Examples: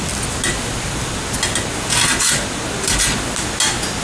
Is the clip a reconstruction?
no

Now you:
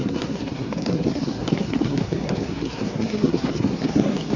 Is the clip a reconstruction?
yes